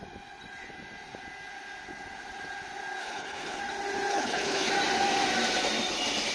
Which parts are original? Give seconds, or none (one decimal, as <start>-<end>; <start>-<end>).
0.0-3.0; 3.6-4.1; 4.7-6.3